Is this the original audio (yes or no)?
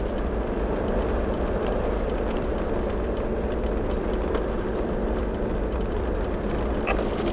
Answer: no